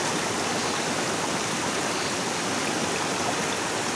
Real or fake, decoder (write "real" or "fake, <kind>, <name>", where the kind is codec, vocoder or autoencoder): real